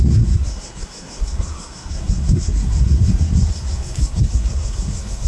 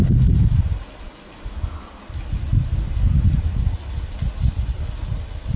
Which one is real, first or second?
second